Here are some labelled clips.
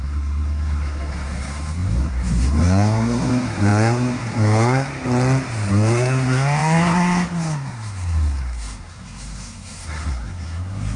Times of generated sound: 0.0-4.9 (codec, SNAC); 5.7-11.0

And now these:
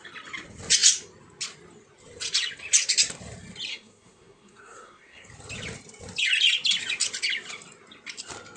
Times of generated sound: 3.7-5.3 (codec, SNAC)

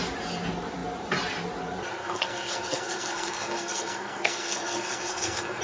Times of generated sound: 2.0-5.6 (codec, SNAC)

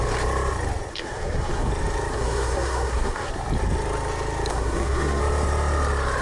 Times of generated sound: 0.9-1.7 (codec, SNAC); 2.1-3.3; 4.5-5.2

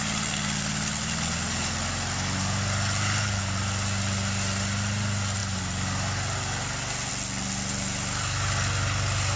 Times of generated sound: none